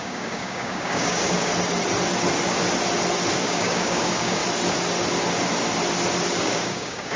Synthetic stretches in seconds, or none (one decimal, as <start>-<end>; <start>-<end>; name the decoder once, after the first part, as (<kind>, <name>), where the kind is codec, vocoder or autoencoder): 0.0-1.5 (codec, DAC); 3.4-4.4; 6.4-7.2

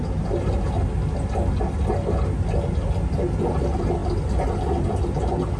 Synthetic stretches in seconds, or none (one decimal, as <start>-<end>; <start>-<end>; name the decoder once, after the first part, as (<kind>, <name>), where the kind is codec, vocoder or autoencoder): none

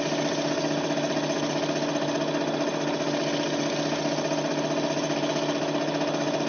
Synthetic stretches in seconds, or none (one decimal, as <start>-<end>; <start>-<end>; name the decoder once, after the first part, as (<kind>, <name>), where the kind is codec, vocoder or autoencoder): none

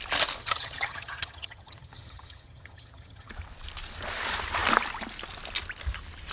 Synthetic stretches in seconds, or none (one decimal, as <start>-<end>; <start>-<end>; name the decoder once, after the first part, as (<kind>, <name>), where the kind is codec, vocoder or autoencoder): 0.4-3.3 (vocoder, HiFi-GAN)

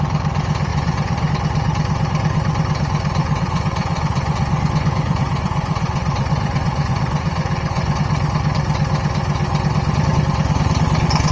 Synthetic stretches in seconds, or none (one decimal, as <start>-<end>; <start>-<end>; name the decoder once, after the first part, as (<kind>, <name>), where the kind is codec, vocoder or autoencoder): 0.7-1.3 (vocoder, Vocos); 3.2-8.0

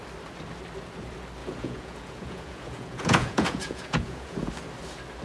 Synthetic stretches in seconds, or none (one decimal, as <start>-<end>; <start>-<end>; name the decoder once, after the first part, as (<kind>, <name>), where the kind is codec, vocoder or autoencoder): 1.4-4.5 (vocoder, Vocos)

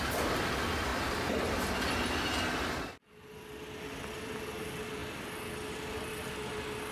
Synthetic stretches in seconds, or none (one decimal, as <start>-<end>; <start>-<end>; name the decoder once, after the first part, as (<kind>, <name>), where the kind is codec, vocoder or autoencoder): none

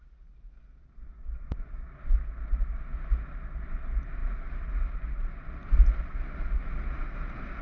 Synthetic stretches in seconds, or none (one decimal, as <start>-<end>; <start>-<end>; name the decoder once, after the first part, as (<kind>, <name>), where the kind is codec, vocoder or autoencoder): none